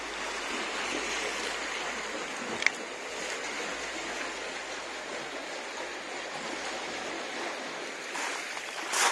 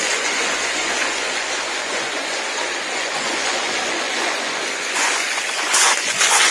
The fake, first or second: second